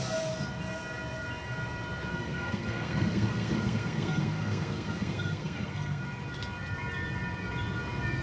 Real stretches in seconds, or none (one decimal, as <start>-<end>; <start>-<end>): 0.0-2.1; 6.0-8.2